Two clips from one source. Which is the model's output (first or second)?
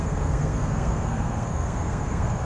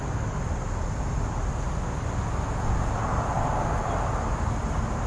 first